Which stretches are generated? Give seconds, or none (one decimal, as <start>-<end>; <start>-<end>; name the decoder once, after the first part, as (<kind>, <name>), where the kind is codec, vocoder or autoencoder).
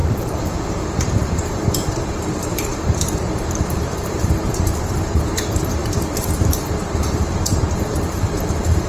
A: 0.0-8.9 (vocoder, BigVGAN v2)